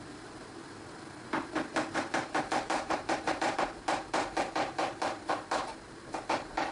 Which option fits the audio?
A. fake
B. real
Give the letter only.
A